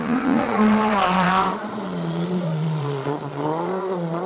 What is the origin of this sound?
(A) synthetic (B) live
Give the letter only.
A